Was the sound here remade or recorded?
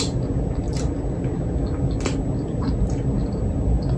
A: recorded